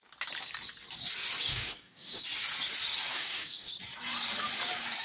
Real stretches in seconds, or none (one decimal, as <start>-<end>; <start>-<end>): 0.0-1.5; 2.2-3.1; 3.7-5.0